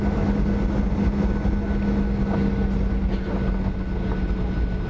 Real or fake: real